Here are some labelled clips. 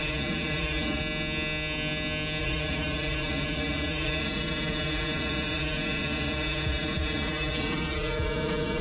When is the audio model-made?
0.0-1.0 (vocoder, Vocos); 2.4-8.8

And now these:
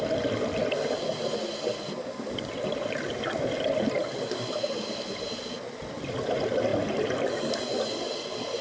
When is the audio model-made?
2.0-2.5 (codec, DAC)

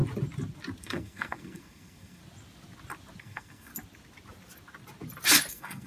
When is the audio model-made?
0.8-2.2 (codec, SNAC); 3.2-3.7; 5.5-5.9

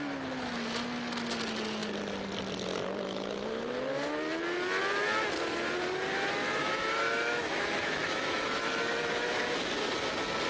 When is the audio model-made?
6.6-9.6 (autoencoder, DAC-VAE)

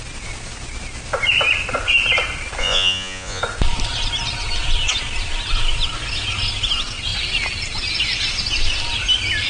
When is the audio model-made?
2.6-3.4 (vocoder, Vocos)